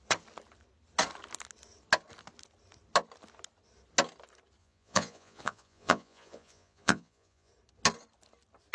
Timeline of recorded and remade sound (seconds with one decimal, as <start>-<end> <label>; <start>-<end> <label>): 0.0-4.6 recorded; 4.6-7.5 remade; 7.5-8.7 recorded